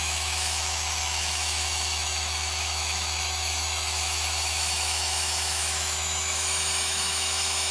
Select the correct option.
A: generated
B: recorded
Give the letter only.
A